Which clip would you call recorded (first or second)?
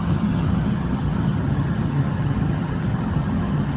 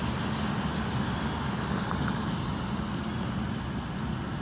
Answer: second